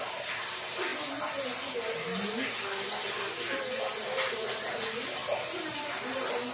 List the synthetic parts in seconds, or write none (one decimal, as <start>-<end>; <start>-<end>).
none